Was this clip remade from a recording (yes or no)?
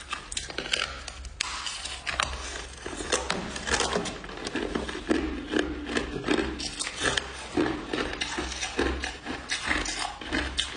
no